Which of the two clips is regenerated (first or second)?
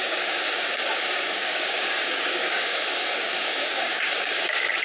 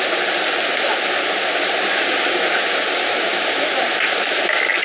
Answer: first